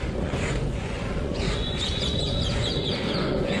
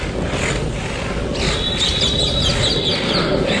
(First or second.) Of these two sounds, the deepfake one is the first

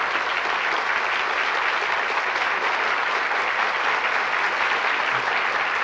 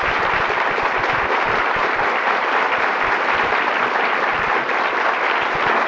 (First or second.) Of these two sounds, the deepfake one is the second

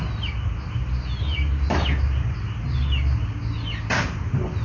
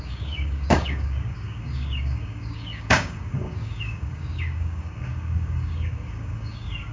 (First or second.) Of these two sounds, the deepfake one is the second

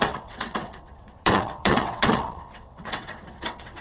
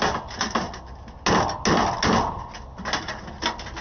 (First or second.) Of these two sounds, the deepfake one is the first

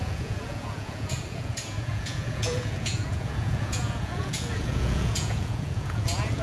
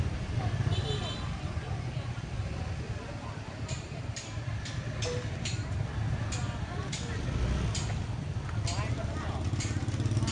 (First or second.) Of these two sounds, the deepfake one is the first